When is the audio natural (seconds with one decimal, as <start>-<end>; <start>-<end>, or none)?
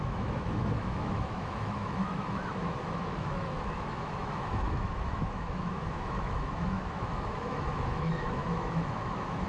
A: none